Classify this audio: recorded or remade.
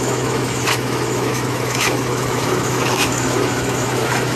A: remade